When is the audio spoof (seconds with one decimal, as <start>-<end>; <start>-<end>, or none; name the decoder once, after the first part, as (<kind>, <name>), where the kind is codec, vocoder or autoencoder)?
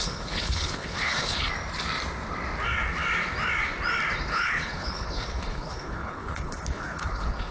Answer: 0.0-1.5 (codec, HILCodec); 4.3-7.5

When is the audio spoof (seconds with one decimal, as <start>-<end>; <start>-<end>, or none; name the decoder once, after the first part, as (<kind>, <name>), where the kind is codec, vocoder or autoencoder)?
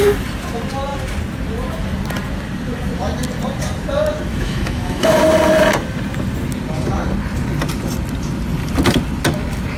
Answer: 4.3-5.2 (autoencoder, DAC-VAE)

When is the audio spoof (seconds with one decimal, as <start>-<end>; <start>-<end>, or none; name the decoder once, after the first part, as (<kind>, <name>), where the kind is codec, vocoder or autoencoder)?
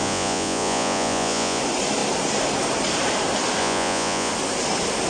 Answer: 0.0-1.6 (vocoder, Vocos); 3.6-4.3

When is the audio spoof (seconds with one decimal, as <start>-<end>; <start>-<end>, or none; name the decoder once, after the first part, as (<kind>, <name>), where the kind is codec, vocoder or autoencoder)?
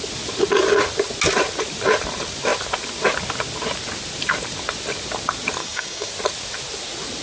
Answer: 5.6-6.1 (codec, DAC)